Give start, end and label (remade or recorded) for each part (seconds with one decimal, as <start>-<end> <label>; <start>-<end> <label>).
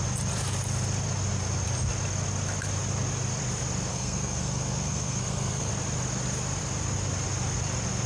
0.0-3.9 recorded; 3.9-5.7 remade; 5.7-8.1 recorded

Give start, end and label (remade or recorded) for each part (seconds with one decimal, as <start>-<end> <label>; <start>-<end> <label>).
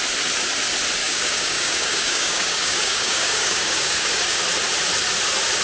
0.0-1.0 recorded; 1.0-4.4 remade; 4.4-5.6 recorded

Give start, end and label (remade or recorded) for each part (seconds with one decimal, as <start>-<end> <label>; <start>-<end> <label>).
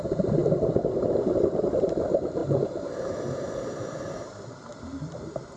0.0-0.4 remade; 0.4-1.2 recorded; 1.2-5.6 remade